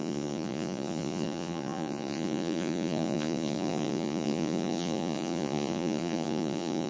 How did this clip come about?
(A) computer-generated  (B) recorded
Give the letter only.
A